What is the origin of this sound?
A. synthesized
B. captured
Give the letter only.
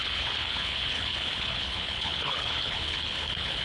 A